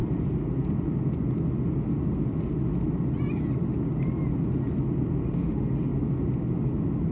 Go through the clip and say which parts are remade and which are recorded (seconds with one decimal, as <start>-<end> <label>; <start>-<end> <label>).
0.0-5.2 recorded; 5.2-5.9 remade; 5.9-7.1 recorded